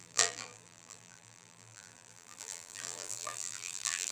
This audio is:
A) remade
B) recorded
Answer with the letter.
A